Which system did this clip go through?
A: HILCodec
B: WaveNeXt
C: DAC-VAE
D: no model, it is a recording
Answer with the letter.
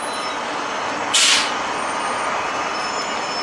D